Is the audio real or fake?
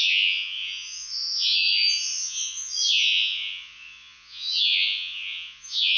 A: fake